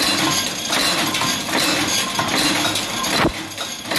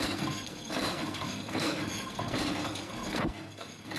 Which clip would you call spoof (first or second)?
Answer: second